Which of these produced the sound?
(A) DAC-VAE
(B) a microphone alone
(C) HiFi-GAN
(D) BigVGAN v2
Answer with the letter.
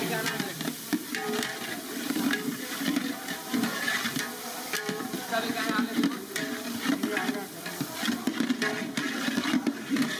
D